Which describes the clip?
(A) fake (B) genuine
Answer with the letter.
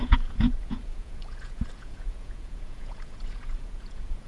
A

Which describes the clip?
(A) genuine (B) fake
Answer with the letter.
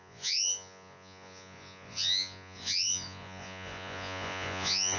B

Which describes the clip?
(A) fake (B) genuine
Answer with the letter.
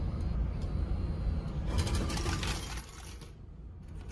B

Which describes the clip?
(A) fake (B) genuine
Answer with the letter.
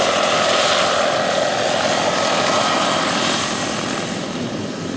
B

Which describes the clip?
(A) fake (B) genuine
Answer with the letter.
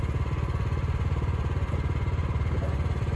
A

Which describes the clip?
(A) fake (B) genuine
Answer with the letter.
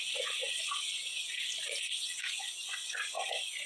A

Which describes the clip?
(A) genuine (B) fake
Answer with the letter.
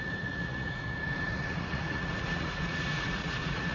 B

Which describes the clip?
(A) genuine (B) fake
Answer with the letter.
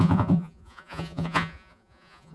B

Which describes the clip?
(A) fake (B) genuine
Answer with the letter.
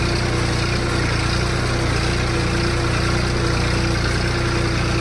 B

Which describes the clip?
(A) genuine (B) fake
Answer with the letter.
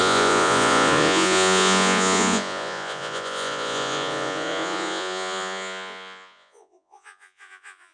B